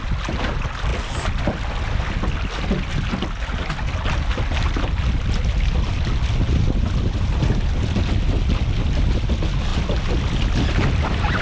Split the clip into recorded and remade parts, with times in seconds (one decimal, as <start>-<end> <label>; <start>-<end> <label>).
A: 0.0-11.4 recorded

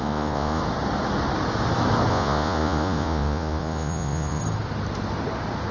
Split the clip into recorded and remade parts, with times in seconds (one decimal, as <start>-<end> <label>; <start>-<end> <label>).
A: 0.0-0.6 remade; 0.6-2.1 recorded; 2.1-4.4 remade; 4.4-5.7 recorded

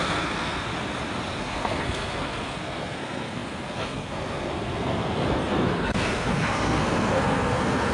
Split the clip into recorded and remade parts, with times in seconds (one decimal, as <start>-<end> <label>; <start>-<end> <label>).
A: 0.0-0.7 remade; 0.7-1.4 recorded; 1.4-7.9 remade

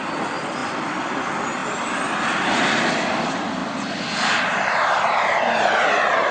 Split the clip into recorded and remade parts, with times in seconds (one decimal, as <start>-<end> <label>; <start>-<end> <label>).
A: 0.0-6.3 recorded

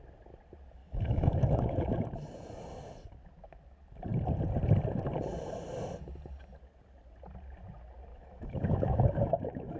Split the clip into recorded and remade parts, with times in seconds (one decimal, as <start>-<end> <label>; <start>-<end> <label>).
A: 0.0-0.8 recorded; 0.8-2.0 remade; 2.0-8.1 recorded; 8.1-9.8 remade

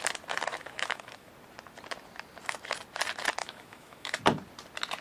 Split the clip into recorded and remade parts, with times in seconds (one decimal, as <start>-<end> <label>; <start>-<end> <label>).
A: 0.0-0.5 recorded; 0.5-1.3 remade; 1.3-3.4 recorded; 3.4-4.2 remade; 4.2-5.0 recorded

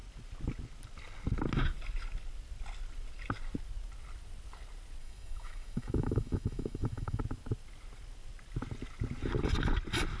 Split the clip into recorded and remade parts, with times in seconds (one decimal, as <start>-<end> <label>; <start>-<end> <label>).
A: 0.0-5.0 recorded; 5.0-7.2 remade; 7.2-10.2 recorded